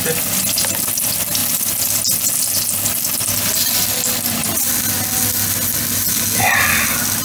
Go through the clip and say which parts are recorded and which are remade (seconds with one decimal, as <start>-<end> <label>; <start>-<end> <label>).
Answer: 0.0-7.2 recorded